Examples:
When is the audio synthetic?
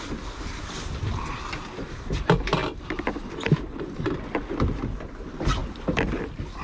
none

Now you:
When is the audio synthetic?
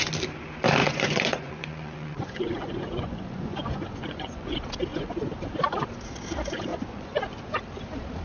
0.8-4.5 (vocoder, Vocos); 4.9-5.9; 6.7-7.6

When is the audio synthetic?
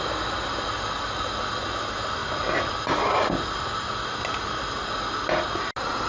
none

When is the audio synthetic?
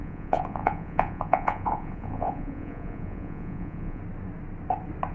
0.0-4.0 (vocoder, Vocos)